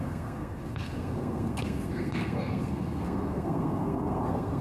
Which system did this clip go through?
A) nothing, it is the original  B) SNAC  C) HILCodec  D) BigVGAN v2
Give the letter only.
B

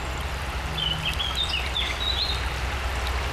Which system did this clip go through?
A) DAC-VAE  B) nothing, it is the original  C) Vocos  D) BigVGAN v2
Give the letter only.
B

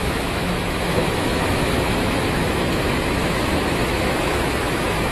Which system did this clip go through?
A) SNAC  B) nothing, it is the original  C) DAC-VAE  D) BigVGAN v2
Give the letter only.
C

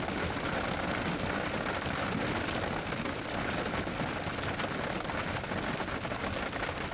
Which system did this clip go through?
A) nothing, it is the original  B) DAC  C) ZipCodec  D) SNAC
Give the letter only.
A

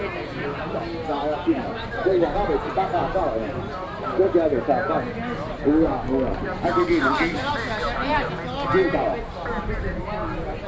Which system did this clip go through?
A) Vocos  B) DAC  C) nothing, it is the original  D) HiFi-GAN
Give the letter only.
C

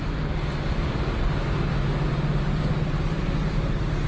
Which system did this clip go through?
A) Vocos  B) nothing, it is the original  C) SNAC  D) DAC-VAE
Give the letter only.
B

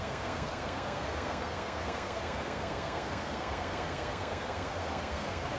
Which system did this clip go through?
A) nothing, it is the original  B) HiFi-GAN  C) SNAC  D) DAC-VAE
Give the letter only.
C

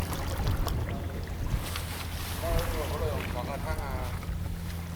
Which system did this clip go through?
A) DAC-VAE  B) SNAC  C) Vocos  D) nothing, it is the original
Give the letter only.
D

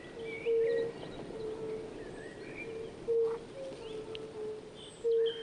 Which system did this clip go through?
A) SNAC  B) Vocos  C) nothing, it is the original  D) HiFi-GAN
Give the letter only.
C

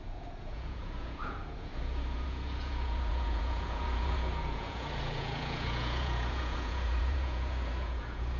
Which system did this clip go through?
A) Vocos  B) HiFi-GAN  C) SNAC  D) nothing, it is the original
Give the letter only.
A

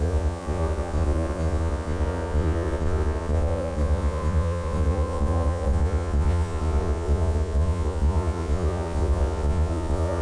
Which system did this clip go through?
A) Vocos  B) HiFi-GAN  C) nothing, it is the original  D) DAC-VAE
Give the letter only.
A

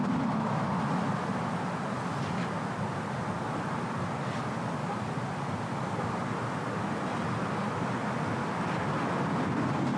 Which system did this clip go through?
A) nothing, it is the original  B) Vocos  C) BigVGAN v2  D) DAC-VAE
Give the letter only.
A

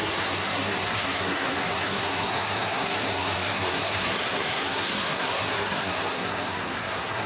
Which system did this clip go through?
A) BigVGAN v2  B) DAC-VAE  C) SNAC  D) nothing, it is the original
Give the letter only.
C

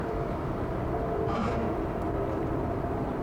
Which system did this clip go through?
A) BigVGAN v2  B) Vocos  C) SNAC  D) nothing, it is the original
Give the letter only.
A